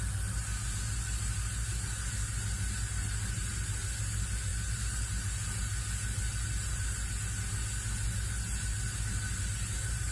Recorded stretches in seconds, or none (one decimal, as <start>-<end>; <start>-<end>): 0.0-10.1